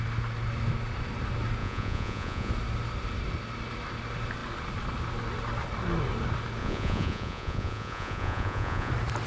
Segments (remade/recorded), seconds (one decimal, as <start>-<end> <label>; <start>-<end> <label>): 0.0-1.6 recorded; 1.6-2.5 remade; 2.5-6.6 recorded; 6.6-8.9 remade; 8.9-9.3 recorded